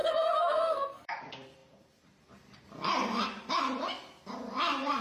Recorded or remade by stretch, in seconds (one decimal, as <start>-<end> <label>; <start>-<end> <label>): 0.0-1.2 remade; 1.2-5.0 recorded